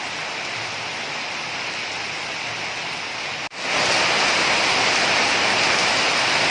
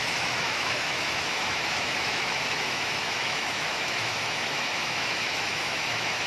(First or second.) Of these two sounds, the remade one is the second